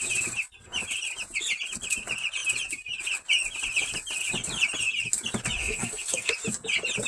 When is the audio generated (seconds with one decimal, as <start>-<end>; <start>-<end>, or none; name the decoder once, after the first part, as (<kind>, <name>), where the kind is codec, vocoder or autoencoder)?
5.6-6.3 (codec, SNAC)